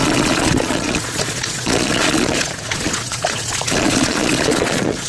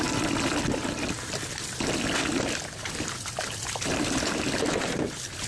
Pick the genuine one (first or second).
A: second